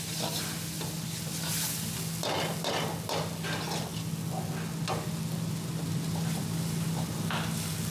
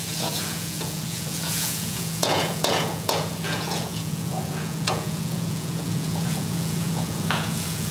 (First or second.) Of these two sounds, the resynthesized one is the second